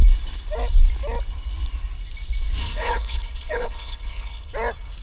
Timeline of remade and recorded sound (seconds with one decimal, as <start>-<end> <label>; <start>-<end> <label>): 0.0-2.6 recorded; 2.6-4.5 remade; 4.5-5.0 recorded